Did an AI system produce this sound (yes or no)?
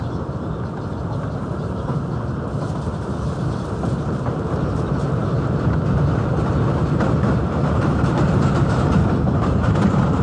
yes